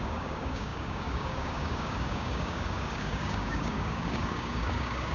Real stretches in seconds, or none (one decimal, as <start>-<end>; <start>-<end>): none

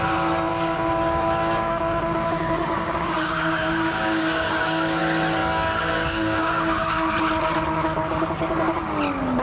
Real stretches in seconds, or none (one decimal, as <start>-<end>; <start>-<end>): 0.0-0.5; 5.0-5.4; 7.1-9.4

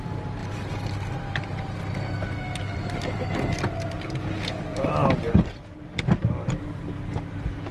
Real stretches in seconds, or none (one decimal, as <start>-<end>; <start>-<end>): 0.0-7.7

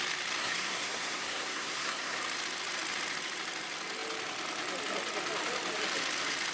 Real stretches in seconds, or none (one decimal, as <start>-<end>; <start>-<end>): 0.0-0.4; 2.2-6.5

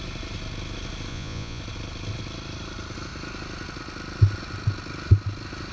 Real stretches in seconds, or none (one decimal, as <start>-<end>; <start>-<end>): 0.0-1.1; 1.6-5.7